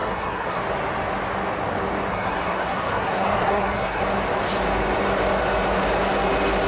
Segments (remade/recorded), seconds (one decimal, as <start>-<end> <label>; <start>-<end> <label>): 0.0-0.6 remade; 0.6-2.1 recorded; 2.1-4.0 remade; 4.0-6.7 recorded